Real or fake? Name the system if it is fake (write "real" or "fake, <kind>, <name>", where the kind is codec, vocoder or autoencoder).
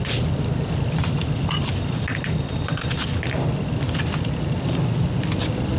real